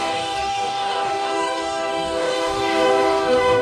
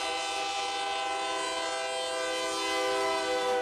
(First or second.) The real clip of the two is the second